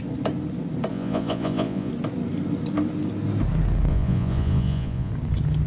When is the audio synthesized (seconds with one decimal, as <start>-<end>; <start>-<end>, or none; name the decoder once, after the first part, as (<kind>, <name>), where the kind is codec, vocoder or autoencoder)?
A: 0.9-1.9 (vocoder, Vocos); 3.9-5.1